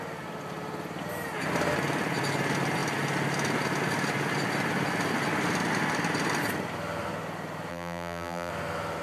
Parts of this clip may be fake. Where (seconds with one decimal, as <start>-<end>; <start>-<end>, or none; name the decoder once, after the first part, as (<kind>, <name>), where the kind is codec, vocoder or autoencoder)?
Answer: 7.7-8.5 (vocoder, BigVGAN v2)

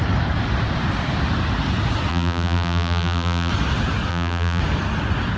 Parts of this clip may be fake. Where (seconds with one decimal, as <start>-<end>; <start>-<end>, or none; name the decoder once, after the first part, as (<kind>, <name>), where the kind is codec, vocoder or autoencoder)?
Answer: 2.1-3.5 (vocoder, BigVGAN v2); 4.1-4.6

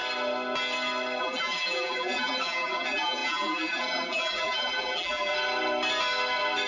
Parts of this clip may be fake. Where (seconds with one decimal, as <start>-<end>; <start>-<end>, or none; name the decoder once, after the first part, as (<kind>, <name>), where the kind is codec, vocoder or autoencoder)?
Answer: 1.2-5.3 (vocoder, BigVGAN v2)

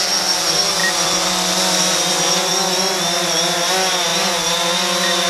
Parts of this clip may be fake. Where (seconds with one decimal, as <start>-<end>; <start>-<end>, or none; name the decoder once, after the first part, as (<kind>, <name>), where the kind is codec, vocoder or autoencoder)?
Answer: 0.8-2.5 (vocoder, BigVGAN v2)

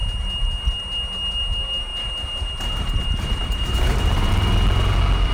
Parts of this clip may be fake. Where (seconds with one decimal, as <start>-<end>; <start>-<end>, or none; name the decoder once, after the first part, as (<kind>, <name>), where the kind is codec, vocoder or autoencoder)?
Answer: 1.9-4.3 (vocoder, BigVGAN v2)